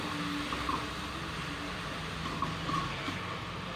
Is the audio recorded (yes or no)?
yes